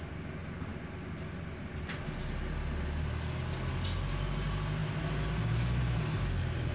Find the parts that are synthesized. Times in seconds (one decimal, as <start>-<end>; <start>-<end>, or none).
none